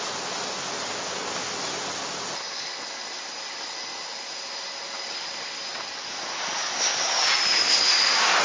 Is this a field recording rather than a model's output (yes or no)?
yes